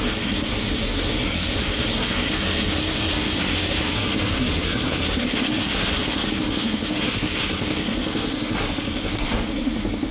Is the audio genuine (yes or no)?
no